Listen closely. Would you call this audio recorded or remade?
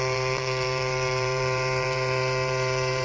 remade